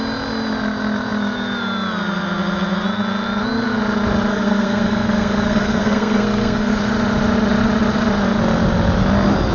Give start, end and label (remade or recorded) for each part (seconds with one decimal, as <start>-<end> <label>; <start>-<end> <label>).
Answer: 0.0-4.3 recorded; 4.3-6.7 remade; 6.7-9.5 recorded